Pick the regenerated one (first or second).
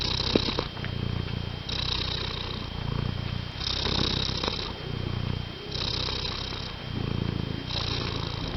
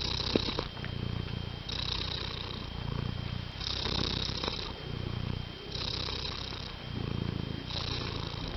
second